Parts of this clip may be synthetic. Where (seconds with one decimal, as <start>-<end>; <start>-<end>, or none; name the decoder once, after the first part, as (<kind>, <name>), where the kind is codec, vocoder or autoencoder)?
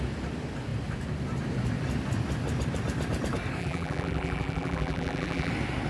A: 3.6-5.5 (vocoder, BigVGAN v2)